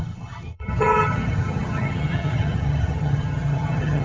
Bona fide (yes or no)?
no